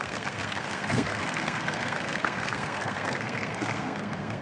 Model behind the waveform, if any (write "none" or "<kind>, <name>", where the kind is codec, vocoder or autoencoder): codec, SNAC